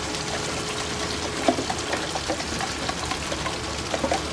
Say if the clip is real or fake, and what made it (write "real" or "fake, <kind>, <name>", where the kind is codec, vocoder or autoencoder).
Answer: real